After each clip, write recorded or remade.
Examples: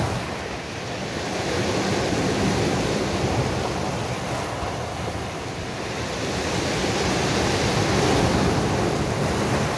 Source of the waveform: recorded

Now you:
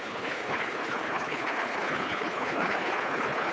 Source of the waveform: remade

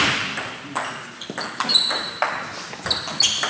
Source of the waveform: recorded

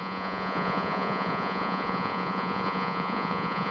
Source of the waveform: remade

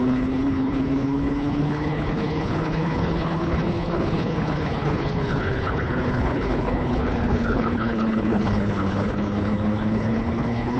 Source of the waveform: remade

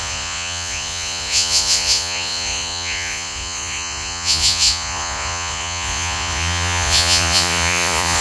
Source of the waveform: remade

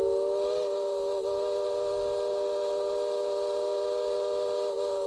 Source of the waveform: recorded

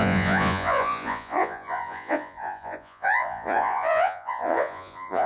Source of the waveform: remade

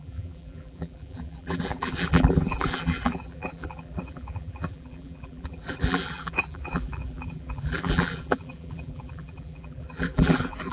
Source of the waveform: remade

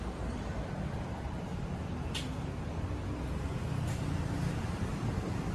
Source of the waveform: recorded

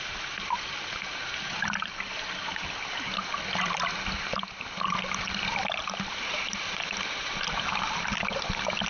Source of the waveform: recorded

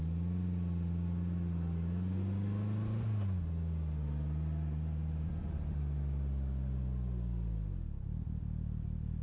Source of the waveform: recorded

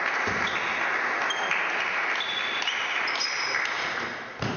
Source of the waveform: recorded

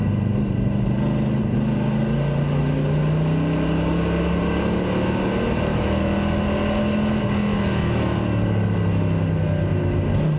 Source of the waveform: recorded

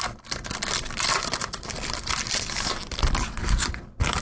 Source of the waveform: recorded